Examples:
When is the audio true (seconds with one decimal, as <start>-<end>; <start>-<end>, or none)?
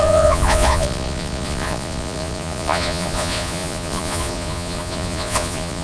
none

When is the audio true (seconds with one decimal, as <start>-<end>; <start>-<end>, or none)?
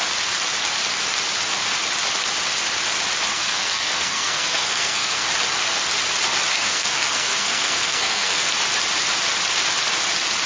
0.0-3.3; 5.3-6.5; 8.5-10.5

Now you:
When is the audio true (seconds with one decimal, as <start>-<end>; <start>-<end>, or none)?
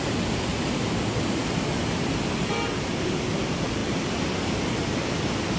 0.0-0.5; 1.3-5.6